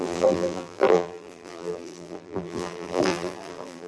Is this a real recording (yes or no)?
no